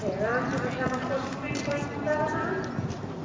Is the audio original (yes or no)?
yes